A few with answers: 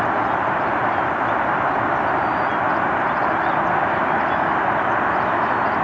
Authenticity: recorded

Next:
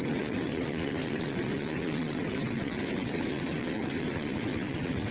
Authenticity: remade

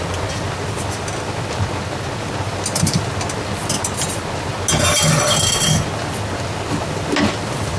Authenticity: recorded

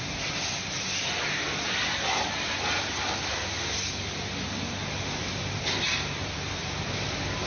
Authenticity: recorded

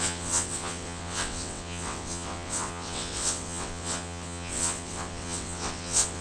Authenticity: remade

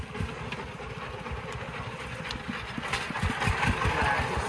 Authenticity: recorded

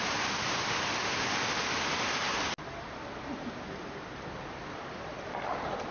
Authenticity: recorded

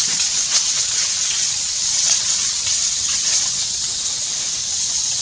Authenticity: remade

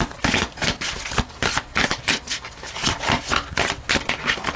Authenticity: recorded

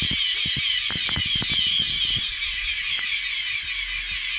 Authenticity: recorded